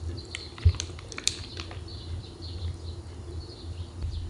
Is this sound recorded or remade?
recorded